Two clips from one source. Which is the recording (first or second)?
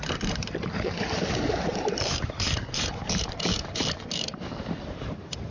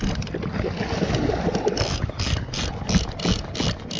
second